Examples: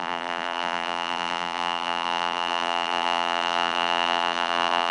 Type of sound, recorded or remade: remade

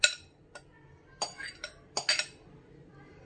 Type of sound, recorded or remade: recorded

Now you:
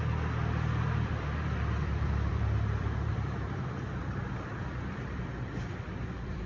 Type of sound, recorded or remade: remade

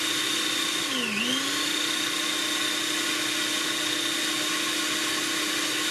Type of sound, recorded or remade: recorded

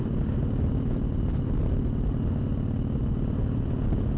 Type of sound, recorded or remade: recorded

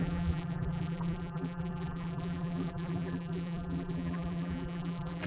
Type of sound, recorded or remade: remade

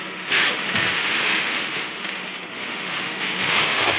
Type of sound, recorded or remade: remade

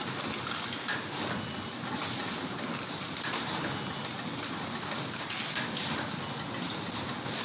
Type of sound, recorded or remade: recorded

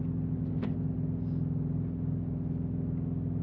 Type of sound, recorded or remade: recorded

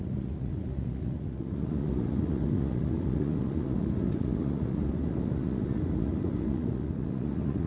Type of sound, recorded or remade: remade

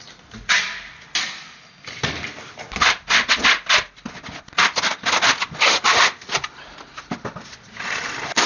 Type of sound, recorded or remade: recorded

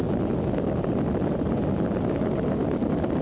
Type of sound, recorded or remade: recorded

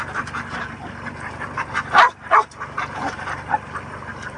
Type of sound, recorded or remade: recorded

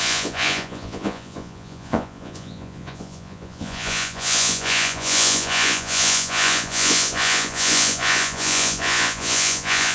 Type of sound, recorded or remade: remade